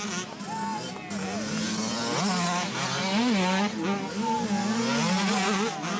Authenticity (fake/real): real